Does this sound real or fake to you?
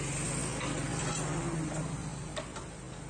real